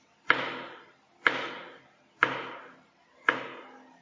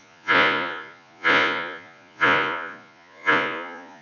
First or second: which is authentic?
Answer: first